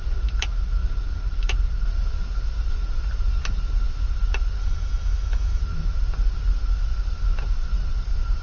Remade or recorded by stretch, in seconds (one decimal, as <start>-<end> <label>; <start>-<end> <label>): 0.0-4.6 recorded; 4.6-5.6 remade; 5.6-8.4 recorded